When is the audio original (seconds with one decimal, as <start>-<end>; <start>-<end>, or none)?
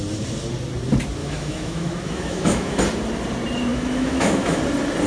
0.0-1.2; 2.8-3.7; 4.6-5.1